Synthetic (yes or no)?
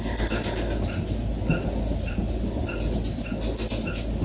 no